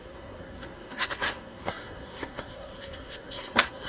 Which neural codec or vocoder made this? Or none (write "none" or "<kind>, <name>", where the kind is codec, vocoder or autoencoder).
codec, SNAC